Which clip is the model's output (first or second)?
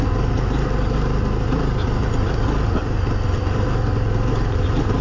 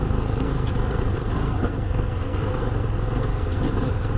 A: second